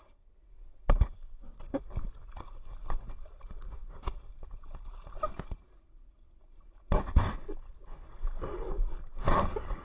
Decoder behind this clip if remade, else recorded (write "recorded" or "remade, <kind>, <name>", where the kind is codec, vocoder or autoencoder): recorded